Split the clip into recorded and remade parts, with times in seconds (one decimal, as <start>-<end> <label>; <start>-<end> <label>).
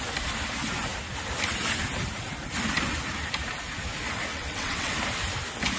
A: 0.0-4.3 recorded; 4.3-4.9 remade; 4.9-5.8 recorded